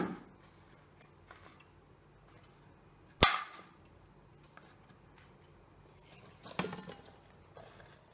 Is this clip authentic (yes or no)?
yes